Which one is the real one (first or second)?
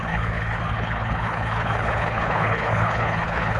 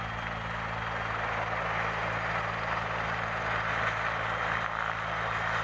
second